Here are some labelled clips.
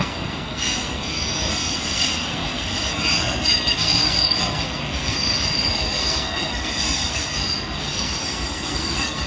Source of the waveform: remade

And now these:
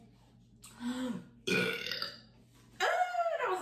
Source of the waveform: recorded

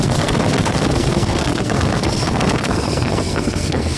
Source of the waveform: remade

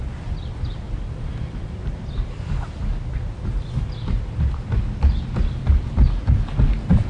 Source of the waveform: recorded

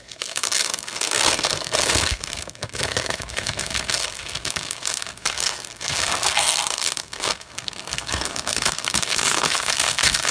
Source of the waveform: remade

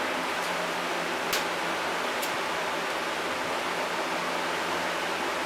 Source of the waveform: recorded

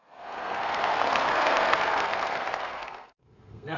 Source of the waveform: remade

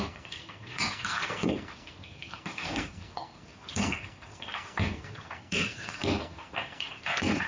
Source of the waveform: remade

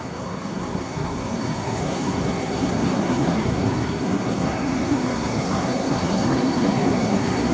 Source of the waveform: remade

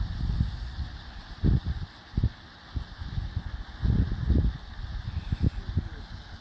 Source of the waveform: recorded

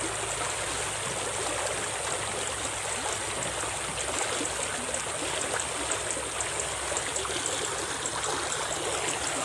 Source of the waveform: recorded